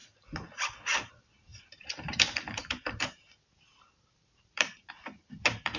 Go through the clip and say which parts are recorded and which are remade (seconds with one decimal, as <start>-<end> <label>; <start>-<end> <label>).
0.0-1.1 recorded; 1.1-5.8 remade